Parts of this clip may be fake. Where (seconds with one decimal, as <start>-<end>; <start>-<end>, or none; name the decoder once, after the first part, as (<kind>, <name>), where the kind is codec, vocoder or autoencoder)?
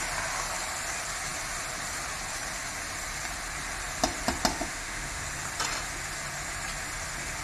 4.5-5.2 (autoencoder, DAC-VAE)